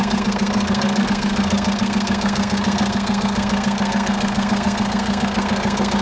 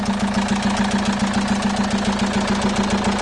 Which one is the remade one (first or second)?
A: first